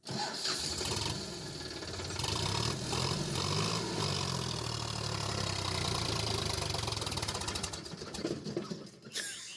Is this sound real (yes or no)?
yes